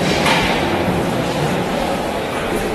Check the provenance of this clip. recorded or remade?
recorded